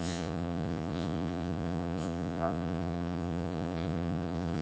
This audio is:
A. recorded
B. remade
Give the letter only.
B